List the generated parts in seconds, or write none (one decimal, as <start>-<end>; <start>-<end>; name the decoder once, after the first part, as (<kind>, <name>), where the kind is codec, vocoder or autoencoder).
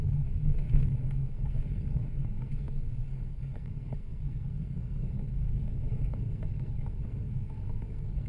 0.0-8.3 (codec, SNAC)